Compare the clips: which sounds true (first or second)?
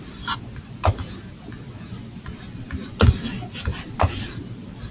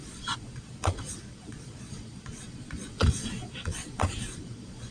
first